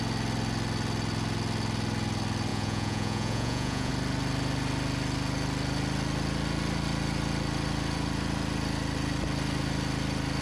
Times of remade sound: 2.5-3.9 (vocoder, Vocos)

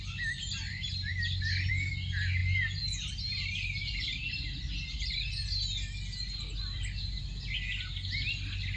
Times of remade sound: none

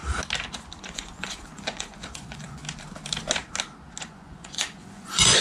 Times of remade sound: 0.8-2.6 (vocoder, Vocos); 4.0-5.4

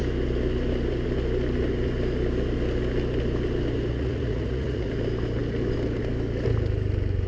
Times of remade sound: 3.9-4.9 (vocoder, Vocos)